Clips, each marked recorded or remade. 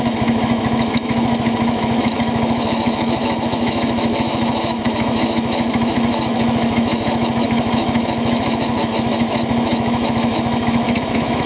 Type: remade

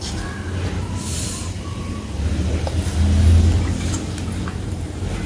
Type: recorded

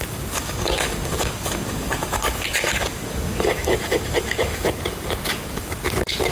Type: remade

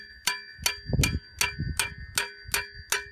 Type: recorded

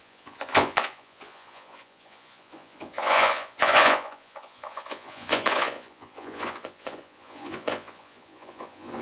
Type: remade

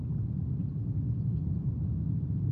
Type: recorded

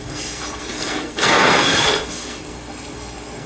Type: remade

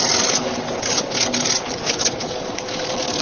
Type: recorded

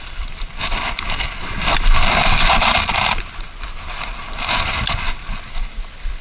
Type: recorded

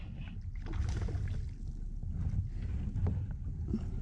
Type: recorded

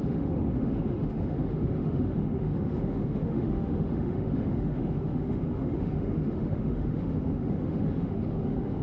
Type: remade